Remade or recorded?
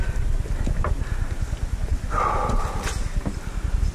recorded